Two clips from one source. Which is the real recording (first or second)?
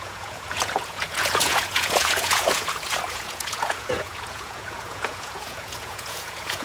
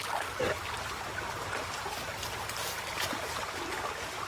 second